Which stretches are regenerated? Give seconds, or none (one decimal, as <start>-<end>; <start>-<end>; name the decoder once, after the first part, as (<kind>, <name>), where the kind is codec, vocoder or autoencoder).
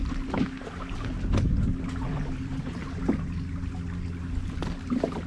none